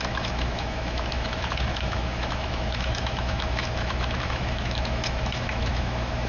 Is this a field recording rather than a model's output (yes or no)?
no